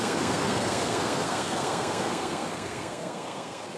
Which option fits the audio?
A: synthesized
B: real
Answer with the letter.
A